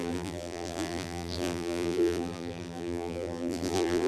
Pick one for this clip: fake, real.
fake